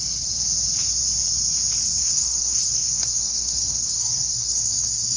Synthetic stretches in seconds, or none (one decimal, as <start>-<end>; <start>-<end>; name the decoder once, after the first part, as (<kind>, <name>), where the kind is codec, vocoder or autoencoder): 2.0-5.2 (codec, SNAC)